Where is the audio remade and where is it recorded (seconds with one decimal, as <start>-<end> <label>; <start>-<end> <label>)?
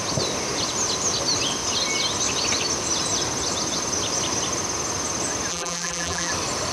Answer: 0.0-5.5 recorded; 5.5-6.3 remade; 6.3-6.7 recorded